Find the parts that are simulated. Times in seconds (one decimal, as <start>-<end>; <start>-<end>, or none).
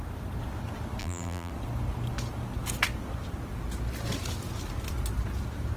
1.0-1.5